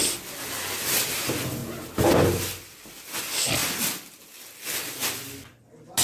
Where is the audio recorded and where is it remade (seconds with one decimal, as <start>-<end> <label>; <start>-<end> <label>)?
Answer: 0.0-6.0 recorded